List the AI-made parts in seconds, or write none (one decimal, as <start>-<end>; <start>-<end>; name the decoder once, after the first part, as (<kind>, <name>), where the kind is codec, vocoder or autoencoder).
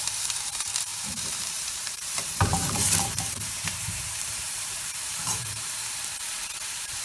0.0-7.0 (vocoder, BigVGAN v2)